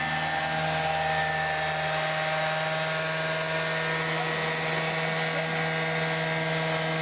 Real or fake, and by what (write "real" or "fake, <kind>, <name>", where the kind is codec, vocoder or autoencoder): real